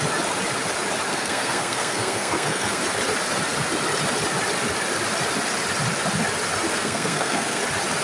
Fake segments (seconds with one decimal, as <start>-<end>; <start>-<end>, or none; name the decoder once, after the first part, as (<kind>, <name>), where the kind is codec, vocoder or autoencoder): 1.1-2.8 (codec, SNAC); 6.7-7.6